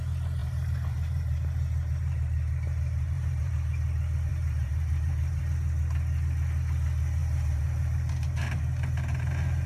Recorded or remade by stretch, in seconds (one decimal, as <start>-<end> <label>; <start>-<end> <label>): 0.0-0.4 recorded; 0.4-3.5 remade; 3.5-4.3 recorded; 4.3-5.4 remade; 5.4-7.2 recorded; 7.2-8.6 remade; 8.6-9.7 recorded